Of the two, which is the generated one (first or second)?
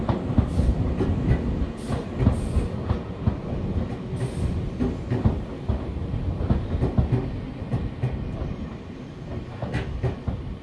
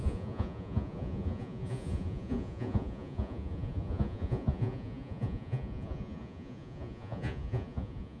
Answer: second